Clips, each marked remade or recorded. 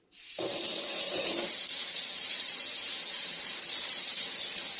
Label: remade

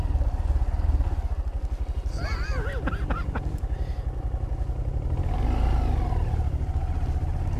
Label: recorded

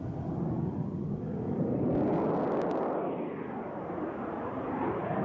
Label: recorded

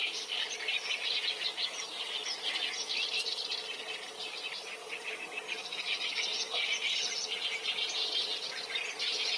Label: recorded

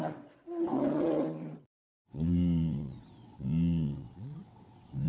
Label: remade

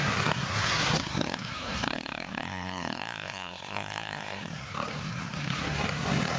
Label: remade